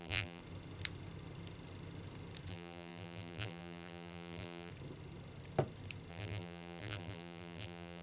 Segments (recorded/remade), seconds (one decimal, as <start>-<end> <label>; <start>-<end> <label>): 0.0-0.4 remade; 0.4-2.5 recorded; 2.5-4.7 remade; 4.7-6.1 recorded; 6.1-8.0 remade